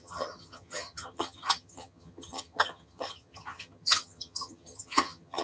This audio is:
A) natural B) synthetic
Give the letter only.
B